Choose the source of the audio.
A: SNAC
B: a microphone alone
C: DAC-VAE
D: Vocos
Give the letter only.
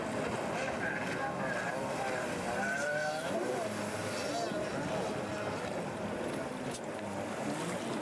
B